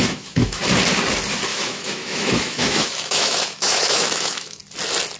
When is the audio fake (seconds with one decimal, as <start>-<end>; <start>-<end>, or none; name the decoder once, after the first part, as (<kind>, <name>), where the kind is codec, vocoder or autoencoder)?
0.0-0.6 (autoencoder, DAC-VAE); 1.5-4.6